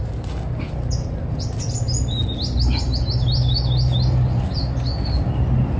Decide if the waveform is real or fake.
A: real